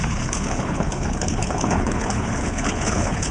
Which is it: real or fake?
fake